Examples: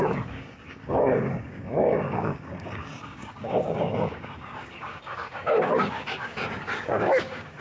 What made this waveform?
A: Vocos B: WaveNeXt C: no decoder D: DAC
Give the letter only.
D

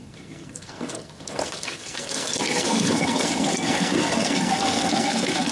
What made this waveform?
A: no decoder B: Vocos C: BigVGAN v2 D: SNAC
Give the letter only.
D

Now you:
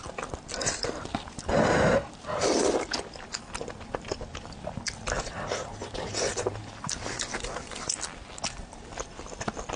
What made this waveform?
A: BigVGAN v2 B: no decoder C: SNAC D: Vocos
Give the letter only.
B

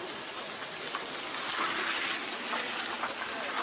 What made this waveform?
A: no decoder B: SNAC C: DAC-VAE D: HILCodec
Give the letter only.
A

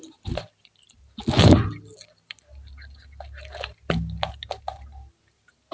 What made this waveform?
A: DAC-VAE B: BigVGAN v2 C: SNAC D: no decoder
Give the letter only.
D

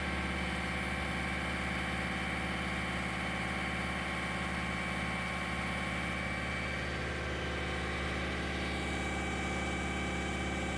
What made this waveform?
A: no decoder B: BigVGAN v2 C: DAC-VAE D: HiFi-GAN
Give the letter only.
A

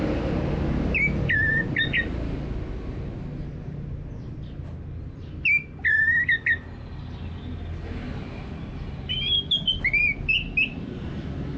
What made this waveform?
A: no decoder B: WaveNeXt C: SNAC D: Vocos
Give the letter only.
A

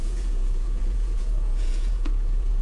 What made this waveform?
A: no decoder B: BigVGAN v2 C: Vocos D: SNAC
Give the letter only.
C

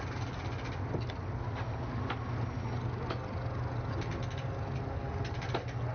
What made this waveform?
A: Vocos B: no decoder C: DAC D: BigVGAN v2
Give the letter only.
B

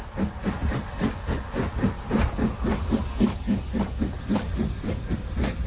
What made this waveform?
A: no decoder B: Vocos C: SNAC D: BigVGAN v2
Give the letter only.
A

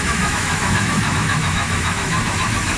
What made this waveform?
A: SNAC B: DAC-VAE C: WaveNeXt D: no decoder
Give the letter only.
B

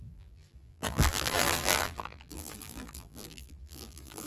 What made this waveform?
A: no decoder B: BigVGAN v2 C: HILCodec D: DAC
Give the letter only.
B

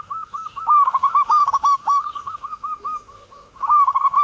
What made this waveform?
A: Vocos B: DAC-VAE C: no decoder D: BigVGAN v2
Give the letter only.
B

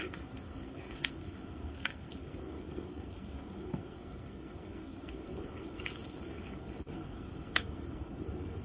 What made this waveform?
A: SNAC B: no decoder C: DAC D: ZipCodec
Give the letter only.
A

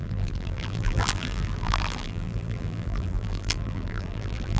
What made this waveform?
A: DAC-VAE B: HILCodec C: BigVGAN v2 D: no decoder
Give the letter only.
C